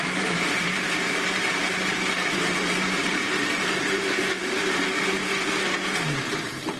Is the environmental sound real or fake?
fake